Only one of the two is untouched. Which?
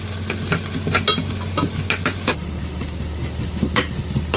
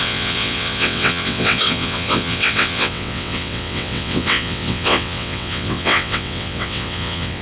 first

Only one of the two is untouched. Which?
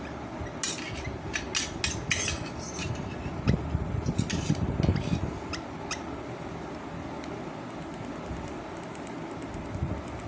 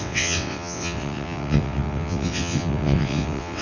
first